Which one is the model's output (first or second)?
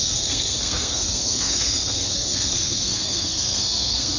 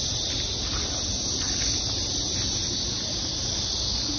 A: first